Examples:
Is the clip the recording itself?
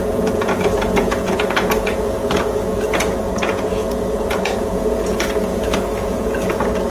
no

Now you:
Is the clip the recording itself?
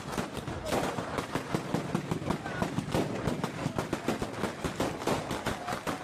yes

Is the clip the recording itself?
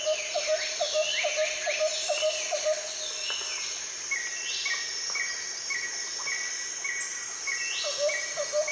yes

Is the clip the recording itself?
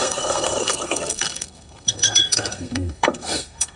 no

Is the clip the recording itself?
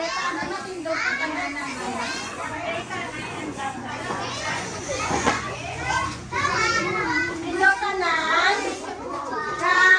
no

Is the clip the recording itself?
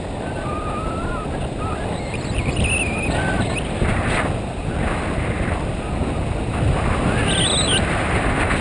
yes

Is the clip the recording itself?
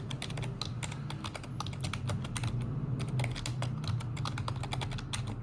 yes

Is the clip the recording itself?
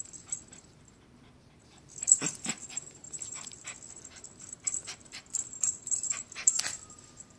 no